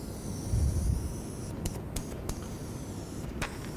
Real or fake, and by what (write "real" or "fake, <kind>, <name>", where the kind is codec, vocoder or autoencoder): real